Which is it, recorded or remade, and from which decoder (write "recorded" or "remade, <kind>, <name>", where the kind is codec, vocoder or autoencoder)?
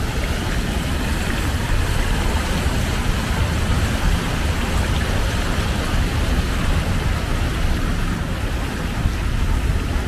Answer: recorded